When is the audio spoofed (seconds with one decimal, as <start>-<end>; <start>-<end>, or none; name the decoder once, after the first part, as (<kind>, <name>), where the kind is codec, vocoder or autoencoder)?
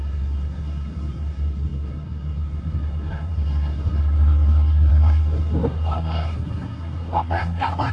0.0-7.9 (codec, SNAC)